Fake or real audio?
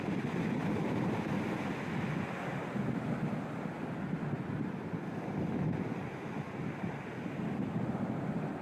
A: real